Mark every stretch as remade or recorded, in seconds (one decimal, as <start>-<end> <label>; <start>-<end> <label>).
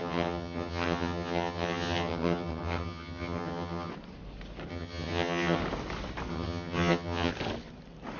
0.0-3.9 remade; 3.9-4.7 recorded; 4.7-5.6 remade; 5.6-6.3 recorded; 6.3-7.3 remade; 7.3-8.2 recorded